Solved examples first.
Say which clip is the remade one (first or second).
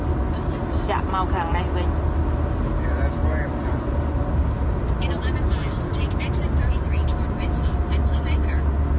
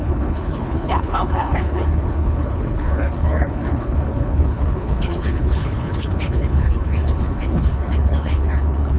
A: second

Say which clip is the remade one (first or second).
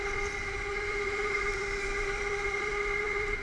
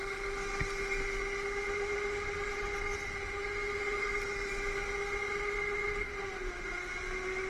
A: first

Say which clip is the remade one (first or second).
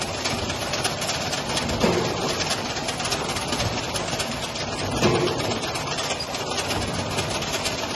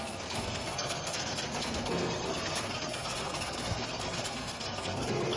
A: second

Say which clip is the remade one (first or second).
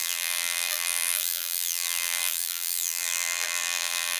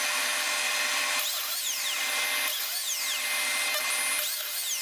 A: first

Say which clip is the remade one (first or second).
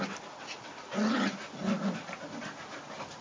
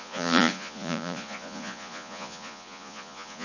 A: second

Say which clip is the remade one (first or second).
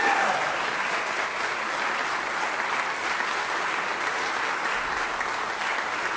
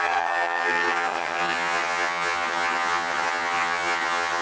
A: second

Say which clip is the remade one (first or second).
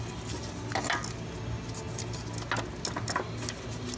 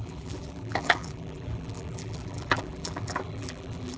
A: second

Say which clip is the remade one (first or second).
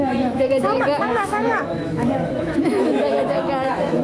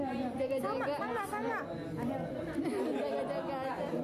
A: first